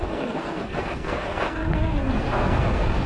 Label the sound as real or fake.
fake